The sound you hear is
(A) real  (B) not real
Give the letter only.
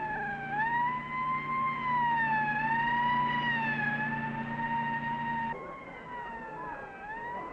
A